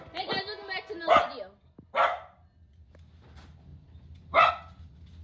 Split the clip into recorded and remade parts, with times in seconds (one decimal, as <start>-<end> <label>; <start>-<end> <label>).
0.0-5.2 recorded